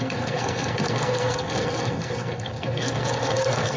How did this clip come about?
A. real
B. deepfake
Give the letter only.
B